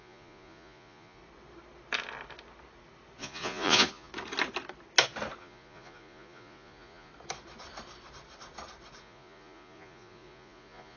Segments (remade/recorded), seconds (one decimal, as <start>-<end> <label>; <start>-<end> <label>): 0.0-1.2 remade; 1.2-3.2 recorded; 3.2-4.1 remade; 4.1-5.4 recorded; 5.4-7.1 remade; 7.1-9.0 recorded; 9.0-11.0 remade